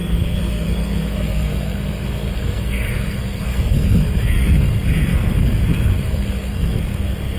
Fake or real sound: fake